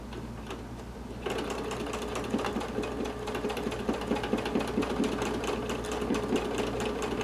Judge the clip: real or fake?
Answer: real